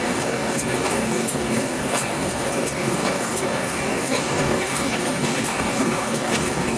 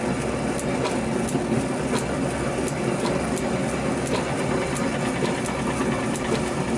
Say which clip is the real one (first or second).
second